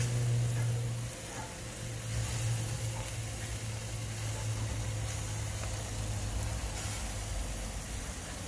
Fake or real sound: real